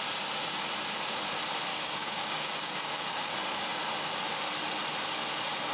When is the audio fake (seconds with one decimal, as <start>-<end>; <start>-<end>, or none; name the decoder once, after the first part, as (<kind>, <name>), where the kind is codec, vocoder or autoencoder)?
1.7-3.3 (codec, DAC)